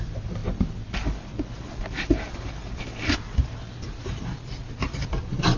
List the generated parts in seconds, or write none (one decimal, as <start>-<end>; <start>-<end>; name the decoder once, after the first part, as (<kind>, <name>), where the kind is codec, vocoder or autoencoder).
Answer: none